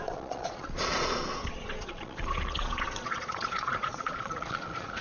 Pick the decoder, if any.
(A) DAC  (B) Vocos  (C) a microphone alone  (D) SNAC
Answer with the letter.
B